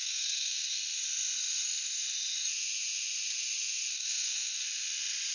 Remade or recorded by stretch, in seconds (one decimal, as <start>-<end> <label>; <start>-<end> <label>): 0.0-0.7 remade; 0.7-3.9 recorded; 3.9-4.6 remade; 4.6-5.3 recorded

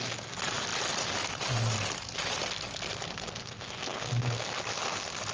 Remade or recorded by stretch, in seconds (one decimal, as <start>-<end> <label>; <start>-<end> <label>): 0.0-3.4 recorded; 3.4-4.6 remade; 4.6-5.3 recorded

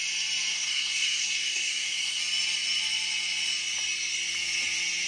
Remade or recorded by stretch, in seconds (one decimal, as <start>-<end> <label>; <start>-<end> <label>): 0.0-0.5 recorded; 0.5-2.2 remade; 2.2-5.1 recorded

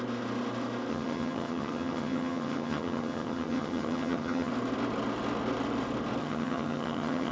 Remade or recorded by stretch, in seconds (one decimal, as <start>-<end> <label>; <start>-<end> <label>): 0.0-0.9 recorded; 0.9-4.5 remade; 4.5-6.2 recorded; 6.2-7.3 remade